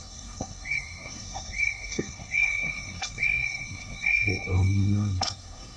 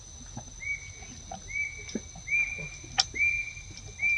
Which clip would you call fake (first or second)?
first